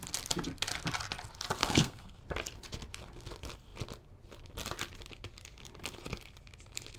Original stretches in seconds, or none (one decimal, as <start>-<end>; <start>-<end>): 0.0-1.6; 2.2-7.0